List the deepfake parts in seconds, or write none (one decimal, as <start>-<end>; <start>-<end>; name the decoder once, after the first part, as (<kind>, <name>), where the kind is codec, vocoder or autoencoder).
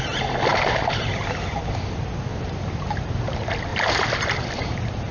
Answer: 0.5-1.2 (vocoder, BigVGAN v2); 2.3-3.3; 3.7-5.1